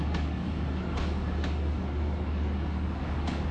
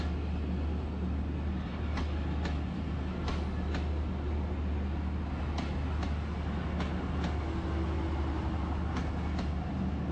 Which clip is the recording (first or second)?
second